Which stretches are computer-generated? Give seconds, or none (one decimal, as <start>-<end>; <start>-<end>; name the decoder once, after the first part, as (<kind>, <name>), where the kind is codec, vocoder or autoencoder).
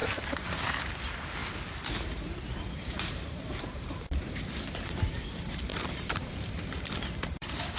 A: 0.9-1.4 (vocoder, BigVGAN v2); 2.8-7.8